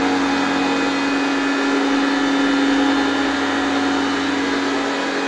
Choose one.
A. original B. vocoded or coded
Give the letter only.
A